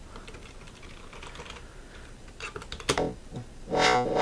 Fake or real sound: real